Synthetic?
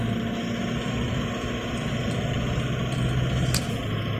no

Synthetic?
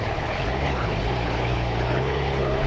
yes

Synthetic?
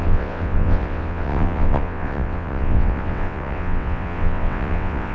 yes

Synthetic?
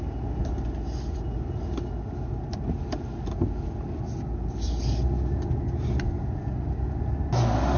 no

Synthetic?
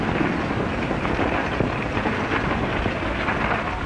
no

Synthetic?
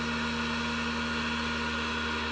no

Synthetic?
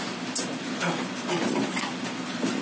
no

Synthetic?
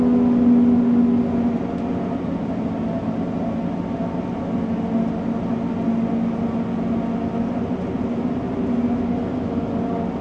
no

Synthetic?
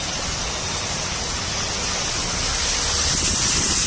no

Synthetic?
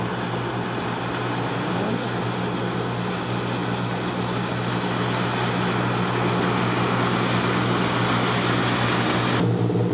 no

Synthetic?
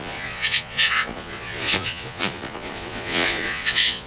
yes